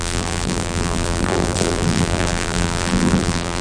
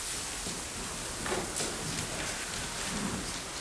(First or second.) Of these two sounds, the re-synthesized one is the first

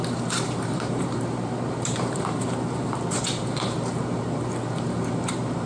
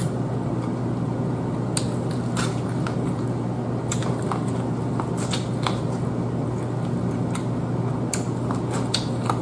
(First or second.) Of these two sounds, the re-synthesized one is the first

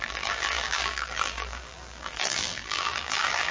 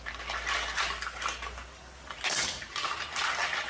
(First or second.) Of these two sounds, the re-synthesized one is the first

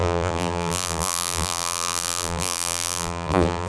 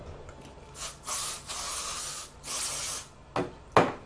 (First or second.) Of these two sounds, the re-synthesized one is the first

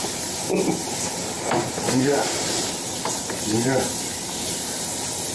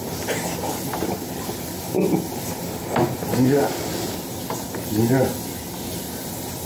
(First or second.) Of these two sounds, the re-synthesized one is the first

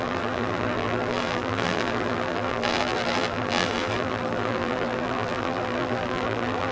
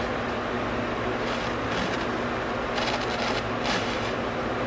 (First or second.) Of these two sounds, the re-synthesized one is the first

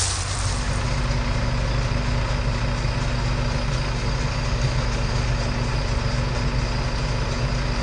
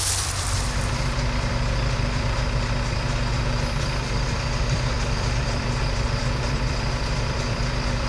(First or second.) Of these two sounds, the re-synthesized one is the second